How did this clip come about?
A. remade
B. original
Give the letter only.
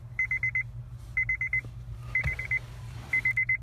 B